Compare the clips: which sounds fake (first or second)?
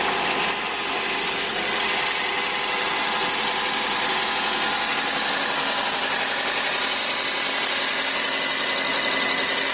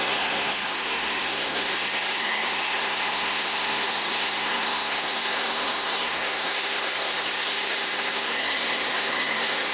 second